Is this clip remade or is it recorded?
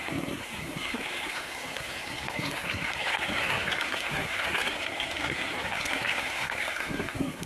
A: remade